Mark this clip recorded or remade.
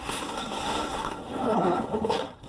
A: remade